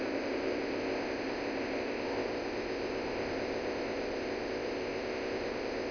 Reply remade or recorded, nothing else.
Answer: remade